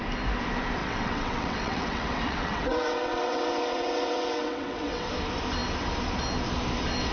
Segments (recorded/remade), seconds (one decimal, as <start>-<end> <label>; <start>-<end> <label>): 0.0-0.8 recorded; 0.8-5.1 remade; 5.1-7.1 recorded